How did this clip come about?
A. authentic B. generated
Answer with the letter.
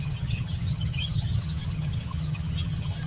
B